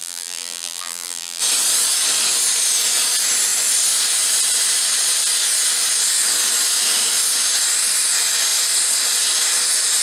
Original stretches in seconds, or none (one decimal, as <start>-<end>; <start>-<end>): 1.4-10.0